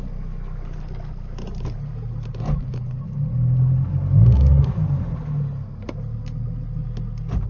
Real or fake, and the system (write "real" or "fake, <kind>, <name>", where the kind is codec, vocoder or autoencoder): real